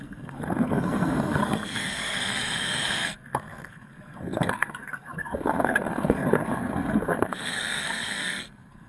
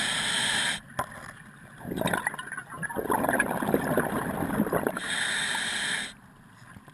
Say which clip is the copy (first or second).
first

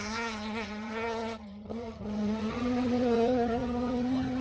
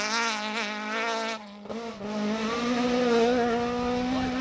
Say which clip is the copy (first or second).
first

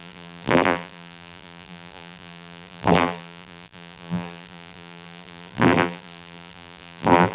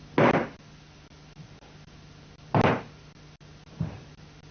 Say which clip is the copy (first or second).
first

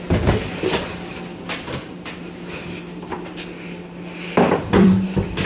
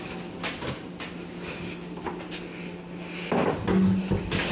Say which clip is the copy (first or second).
first